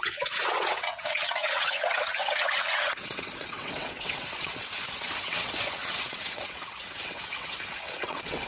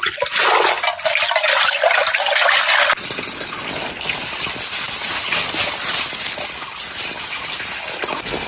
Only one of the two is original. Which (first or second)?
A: second